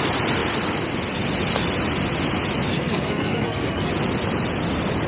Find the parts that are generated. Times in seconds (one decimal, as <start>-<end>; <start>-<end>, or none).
2.7-3.9